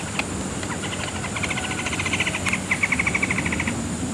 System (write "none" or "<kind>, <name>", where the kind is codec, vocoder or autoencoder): none